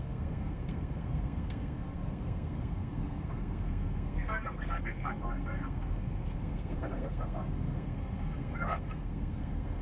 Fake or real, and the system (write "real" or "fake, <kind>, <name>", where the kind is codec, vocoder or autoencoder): fake, codec, SNAC